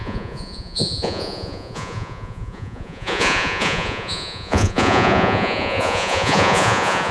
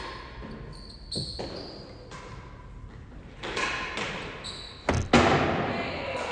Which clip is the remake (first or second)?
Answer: first